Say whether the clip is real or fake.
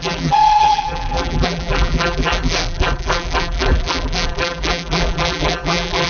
fake